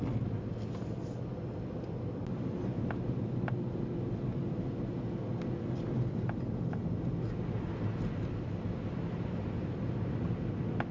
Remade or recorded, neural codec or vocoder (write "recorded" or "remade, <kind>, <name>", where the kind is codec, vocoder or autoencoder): recorded